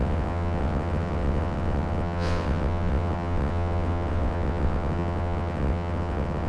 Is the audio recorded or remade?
remade